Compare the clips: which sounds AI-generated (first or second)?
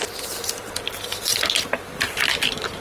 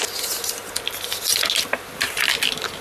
first